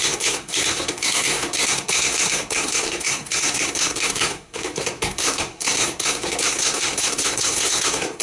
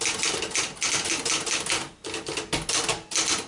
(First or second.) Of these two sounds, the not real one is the first